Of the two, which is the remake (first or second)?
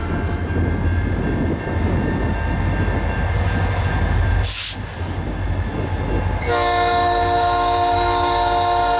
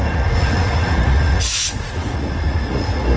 second